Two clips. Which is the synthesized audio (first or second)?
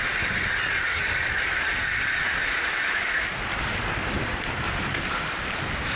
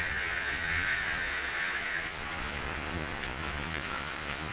second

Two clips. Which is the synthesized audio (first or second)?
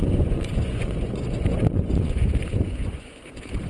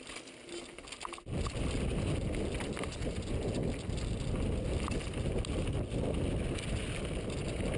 first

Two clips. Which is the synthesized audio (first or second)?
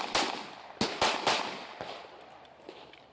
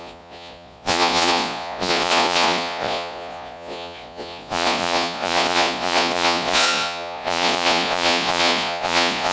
second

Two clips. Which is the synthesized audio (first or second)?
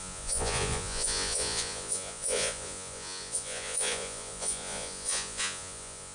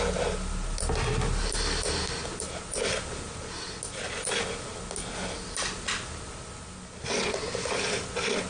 first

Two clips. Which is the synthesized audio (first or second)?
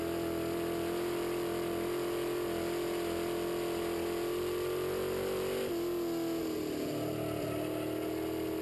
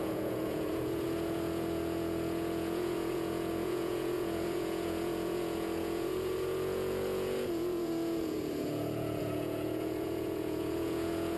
second